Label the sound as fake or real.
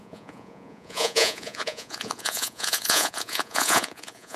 fake